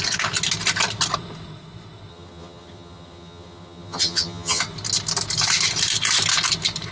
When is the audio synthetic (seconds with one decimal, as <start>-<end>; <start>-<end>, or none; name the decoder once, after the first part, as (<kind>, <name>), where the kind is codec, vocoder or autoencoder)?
2.1-4.6 (vocoder, HiFi-GAN)